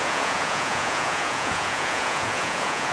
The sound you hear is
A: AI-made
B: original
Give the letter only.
A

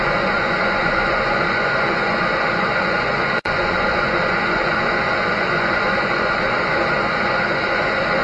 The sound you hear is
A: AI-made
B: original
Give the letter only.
A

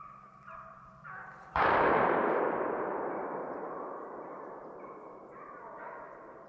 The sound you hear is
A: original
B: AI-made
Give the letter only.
B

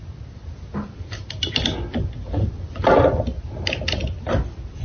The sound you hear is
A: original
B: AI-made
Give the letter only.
B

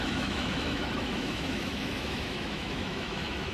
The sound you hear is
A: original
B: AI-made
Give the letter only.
B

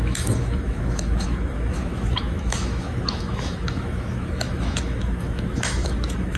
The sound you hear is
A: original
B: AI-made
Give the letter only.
B